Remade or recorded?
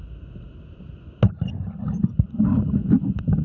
recorded